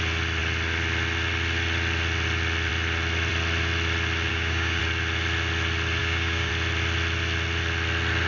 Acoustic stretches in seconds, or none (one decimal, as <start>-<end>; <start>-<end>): 0.0-4.3; 4.8-6.0; 6.5-8.3

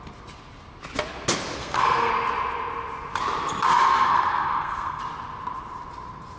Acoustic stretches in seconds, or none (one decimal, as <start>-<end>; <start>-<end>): 0.0-1.6; 2.1-3.7; 5.0-6.4